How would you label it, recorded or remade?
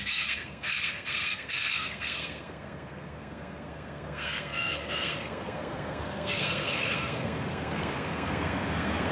remade